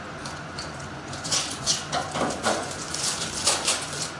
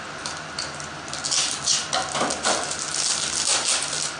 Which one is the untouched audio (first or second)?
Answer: second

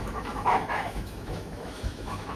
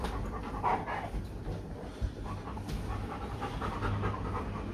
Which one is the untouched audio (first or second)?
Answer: second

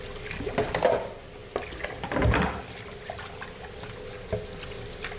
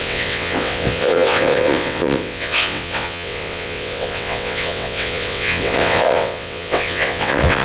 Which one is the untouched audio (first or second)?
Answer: first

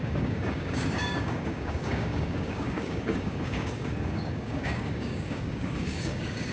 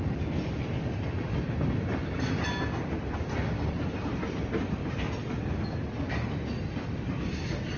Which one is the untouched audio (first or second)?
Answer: second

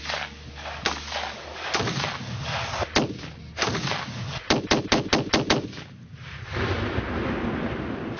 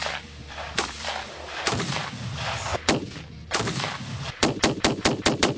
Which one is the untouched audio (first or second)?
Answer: first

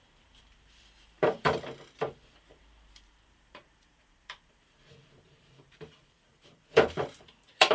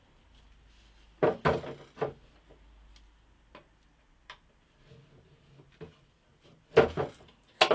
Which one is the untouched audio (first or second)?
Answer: second